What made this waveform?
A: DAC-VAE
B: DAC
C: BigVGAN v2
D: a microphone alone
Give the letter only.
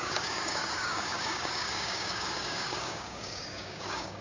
B